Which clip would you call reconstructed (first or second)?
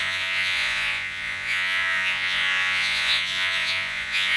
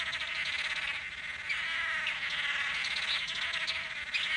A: first